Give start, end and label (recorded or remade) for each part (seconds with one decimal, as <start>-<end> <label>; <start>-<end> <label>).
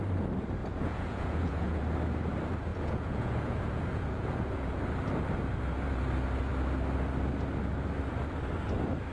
0.0-0.6 recorded; 0.6-1.8 remade; 1.8-2.7 recorded; 2.7-4.7 remade; 4.7-9.1 recorded